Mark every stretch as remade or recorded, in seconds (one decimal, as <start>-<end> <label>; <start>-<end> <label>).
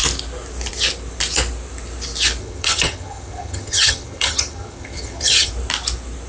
0.0-2.4 recorded; 2.4-5.5 remade; 5.5-6.3 recorded